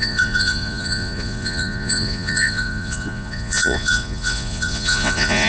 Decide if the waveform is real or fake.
fake